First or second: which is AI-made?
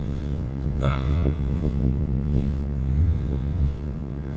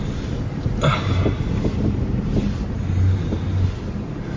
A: first